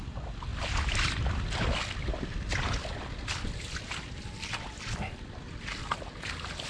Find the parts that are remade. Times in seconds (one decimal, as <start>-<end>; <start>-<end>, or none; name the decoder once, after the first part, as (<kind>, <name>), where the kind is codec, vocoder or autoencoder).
none